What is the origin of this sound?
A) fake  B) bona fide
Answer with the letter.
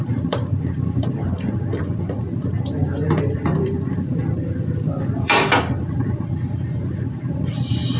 A